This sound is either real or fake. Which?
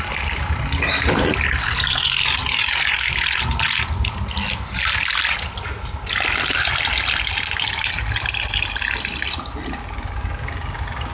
real